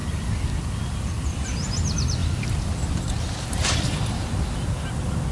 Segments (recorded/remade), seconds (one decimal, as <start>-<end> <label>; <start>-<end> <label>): 0.0-5.3 recorded